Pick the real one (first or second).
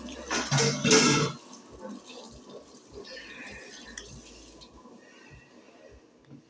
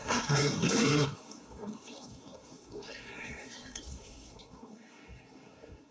first